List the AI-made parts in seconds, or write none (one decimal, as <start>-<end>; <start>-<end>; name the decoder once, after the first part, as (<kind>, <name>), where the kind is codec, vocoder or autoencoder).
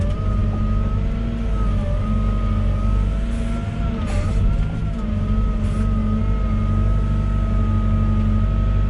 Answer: none